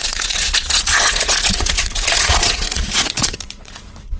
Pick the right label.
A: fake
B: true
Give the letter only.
A